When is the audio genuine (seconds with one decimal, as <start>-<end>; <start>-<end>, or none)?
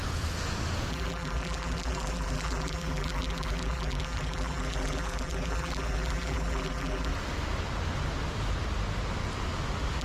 0.0-0.9; 7.1-10.0